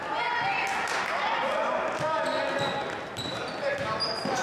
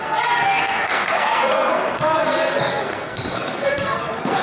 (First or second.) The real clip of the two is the first